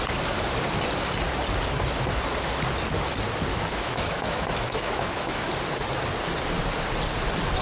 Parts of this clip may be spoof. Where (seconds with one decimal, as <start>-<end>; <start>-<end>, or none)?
3.5-5.5